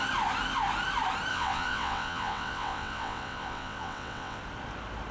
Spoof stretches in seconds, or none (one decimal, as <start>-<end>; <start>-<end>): 1.3-4.4